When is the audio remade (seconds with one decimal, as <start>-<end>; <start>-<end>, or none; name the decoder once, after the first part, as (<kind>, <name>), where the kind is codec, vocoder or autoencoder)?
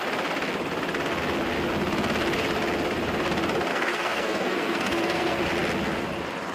3.7-5.4 (codec, SNAC)